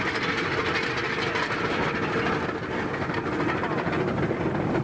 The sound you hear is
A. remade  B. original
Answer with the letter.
B